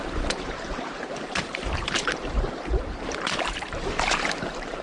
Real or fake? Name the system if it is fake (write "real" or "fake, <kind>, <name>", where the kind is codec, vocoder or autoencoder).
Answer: fake, vocoder, BigVGAN v2